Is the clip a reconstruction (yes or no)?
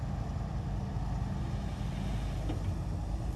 no